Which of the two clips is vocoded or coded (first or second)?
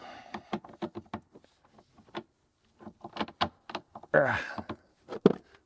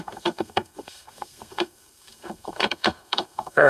second